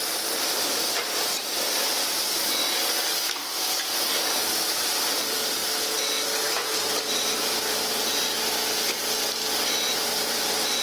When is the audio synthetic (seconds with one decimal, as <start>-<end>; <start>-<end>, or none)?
none